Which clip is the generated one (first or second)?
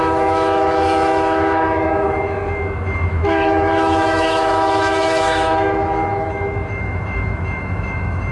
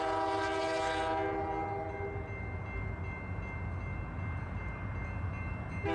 first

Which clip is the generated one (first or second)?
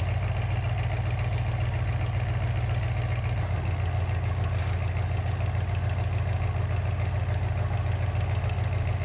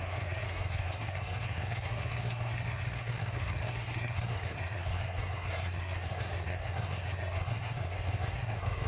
second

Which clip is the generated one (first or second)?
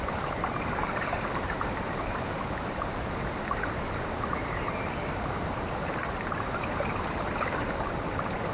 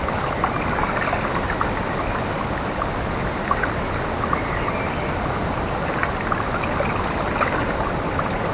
first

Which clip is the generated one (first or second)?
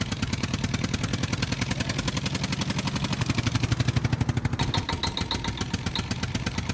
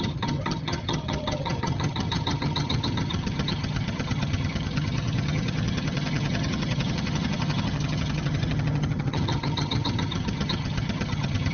second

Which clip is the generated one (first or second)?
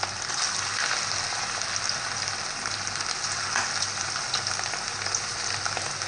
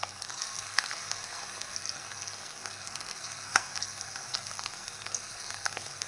second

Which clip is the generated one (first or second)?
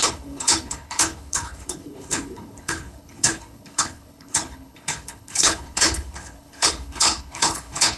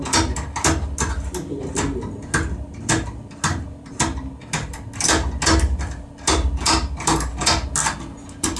first